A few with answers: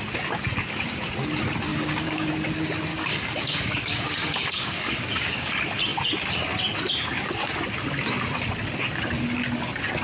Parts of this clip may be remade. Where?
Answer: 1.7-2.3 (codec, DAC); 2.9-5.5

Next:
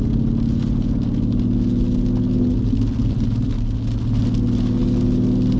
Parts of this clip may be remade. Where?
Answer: none